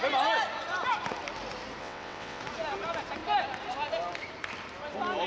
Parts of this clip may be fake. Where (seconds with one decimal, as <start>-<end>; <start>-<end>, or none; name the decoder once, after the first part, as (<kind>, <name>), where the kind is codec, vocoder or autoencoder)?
1.8-2.4 (vocoder, WaveNeXt)